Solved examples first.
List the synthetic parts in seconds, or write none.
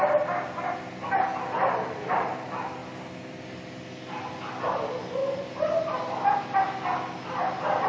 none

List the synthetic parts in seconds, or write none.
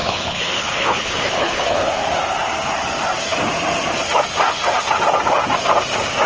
0.0-1.9 (codec, HILCodec)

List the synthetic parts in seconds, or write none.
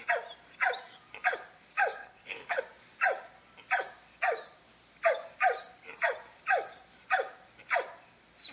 2.0-2.6 (codec, HILCodec)